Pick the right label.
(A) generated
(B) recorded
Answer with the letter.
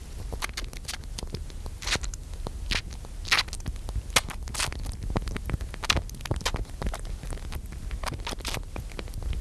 B